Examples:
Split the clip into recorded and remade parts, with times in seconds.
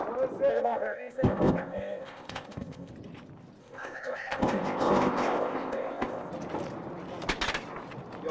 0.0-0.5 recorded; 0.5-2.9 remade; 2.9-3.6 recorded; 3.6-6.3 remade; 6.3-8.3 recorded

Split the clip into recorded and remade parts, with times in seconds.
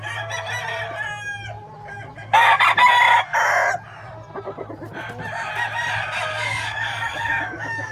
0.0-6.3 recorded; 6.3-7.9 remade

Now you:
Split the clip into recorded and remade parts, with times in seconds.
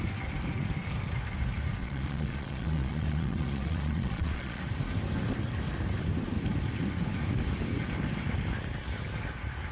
0.0-1.8 recorded; 1.8-4.6 remade; 4.6-9.7 recorded